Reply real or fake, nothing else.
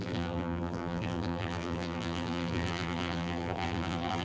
fake